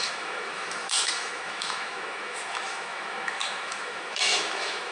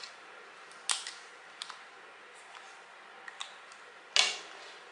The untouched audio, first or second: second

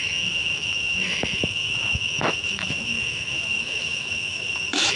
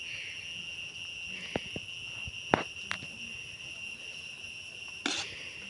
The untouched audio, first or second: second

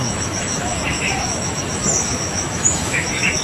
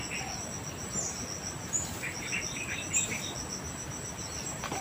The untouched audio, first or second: second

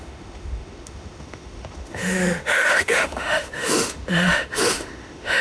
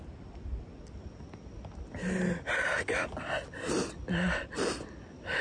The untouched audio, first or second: second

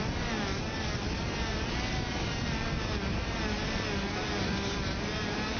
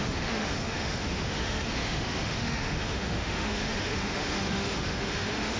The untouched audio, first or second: first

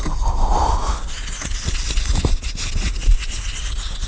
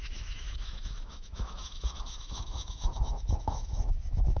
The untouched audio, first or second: first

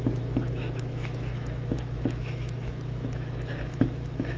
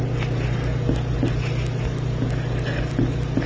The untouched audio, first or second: second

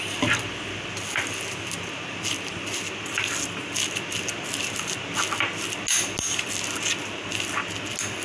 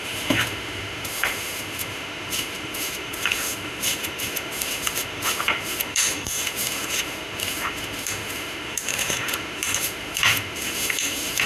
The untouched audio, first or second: first